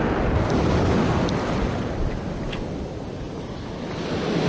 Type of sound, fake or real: real